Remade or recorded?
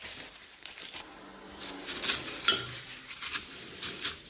remade